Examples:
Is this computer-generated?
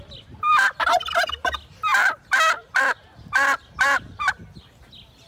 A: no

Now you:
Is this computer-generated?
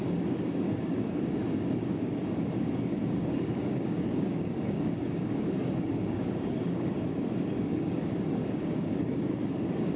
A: yes